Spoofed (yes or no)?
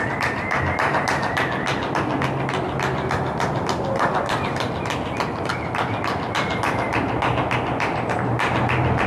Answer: no